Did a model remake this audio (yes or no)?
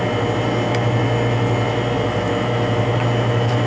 no